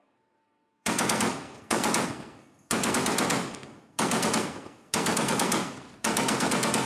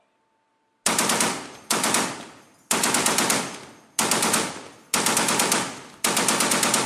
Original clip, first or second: second